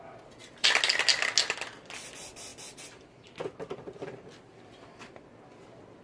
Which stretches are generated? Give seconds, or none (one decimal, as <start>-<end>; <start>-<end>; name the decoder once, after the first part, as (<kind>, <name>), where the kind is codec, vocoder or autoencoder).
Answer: none